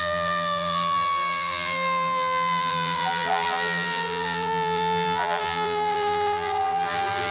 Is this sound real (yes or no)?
no